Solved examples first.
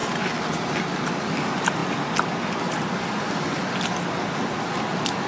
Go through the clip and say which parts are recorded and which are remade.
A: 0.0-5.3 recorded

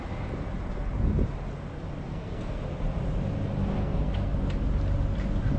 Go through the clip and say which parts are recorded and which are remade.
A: 0.0-2.1 recorded; 2.1-2.6 remade; 2.6-3.8 recorded; 3.8-4.4 remade; 4.4-5.6 recorded

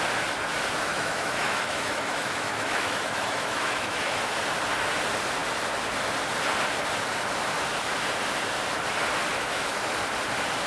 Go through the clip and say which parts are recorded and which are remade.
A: 0.0-0.9 recorded; 0.9-4.2 remade; 4.2-9.3 recorded; 9.3-9.9 remade; 9.9-10.7 recorded